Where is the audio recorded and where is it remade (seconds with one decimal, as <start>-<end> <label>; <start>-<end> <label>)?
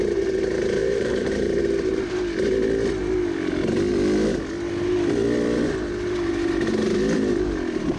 0.0-0.8 recorded; 0.8-1.6 remade; 1.6-8.0 recorded